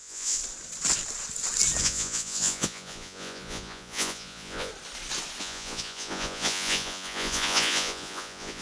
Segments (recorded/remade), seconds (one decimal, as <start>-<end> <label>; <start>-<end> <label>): 0.0-0.4 remade; 0.4-1.8 recorded; 1.8-4.7 remade; 4.7-5.4 recorded; 5.4-8.6 remade